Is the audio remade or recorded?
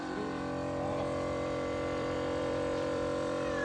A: remade